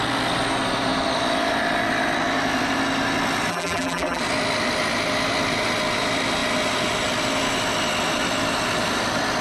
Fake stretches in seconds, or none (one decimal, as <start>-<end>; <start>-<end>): 3.5-4.2